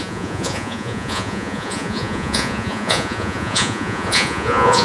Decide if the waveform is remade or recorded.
remade